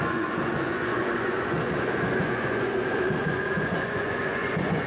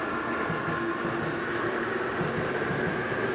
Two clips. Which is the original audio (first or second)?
second